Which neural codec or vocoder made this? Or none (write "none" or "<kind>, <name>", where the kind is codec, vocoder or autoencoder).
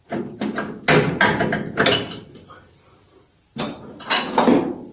none